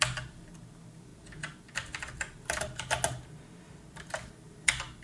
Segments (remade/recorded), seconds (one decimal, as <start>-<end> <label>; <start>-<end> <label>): 0.0-5.0 recorded